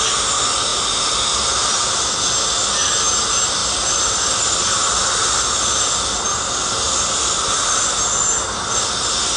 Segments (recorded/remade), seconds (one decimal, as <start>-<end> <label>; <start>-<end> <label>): 0.0-0.7 recorded; 0.7-1.2 remade; 1.2-3.6 recorded; 3.6-8.0 remade; 8.0-9.4 recorded